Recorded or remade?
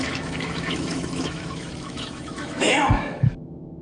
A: remade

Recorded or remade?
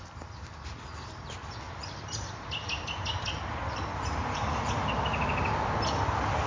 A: recorded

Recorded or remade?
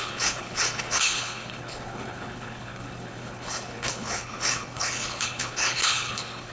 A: remade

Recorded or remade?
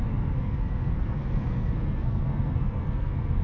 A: remade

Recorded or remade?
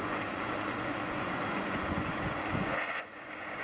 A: remade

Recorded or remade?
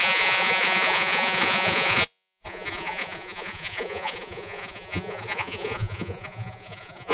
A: remade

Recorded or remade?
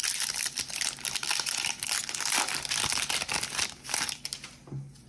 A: recorded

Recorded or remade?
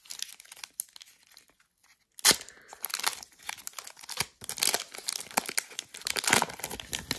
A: recorded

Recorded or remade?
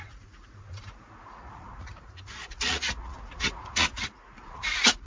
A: remade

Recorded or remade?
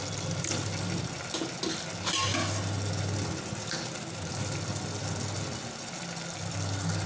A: recorded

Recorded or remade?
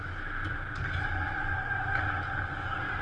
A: recorded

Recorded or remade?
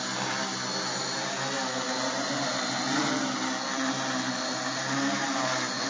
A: recorded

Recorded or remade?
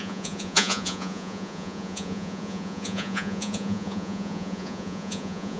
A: remade